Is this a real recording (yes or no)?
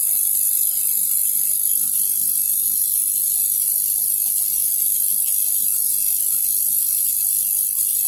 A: yes